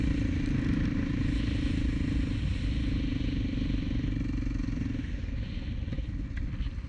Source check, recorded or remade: recorded